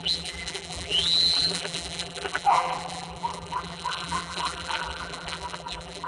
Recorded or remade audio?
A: remade